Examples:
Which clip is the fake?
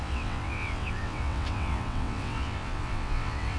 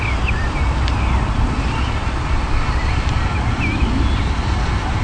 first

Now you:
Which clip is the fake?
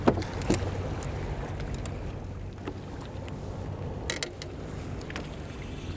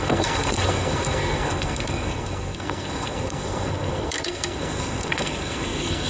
second